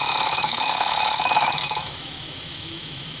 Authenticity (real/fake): fake